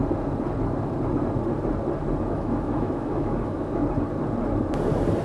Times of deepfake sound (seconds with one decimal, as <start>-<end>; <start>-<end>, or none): 2.2-3.8